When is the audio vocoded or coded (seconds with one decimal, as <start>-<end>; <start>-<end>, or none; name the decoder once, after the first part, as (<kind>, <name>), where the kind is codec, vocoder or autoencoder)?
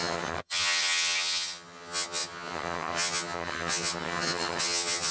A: 0.0-5.1 (vocoder, HiFi-GAN)